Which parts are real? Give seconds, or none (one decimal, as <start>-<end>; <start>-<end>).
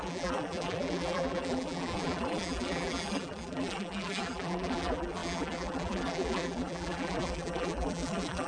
none